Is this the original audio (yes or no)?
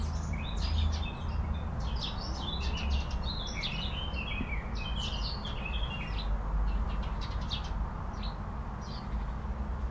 yes